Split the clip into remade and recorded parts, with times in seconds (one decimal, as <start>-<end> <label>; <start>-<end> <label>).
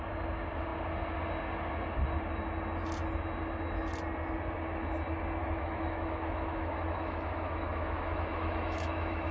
0.0-5.4 recorded; 5.4-9.3 remade